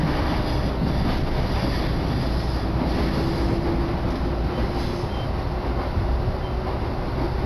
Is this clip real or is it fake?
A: real